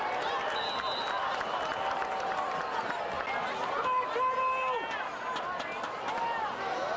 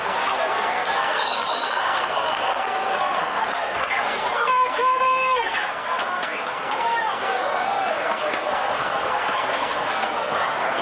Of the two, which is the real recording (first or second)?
first